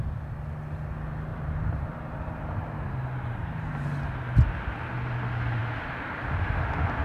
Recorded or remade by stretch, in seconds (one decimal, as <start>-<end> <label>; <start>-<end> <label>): 0.0-1.3 recorded; 1.3-4.2 remade; 4.2-7.0 recorded